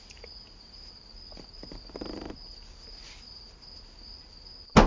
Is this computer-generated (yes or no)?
no